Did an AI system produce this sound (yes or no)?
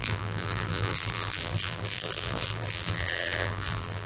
yes